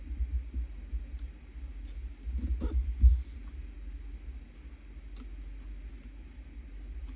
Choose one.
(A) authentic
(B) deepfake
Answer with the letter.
A